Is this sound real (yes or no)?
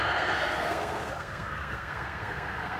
no